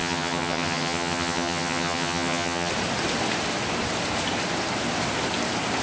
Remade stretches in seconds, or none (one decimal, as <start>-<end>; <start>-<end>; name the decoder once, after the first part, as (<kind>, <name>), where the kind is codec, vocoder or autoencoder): 0.0-2.7 (vocoder, HiFi-GAN)